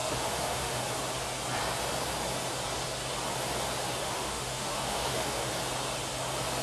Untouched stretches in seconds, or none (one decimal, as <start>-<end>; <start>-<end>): 0.8-4.0; 5.5-6.6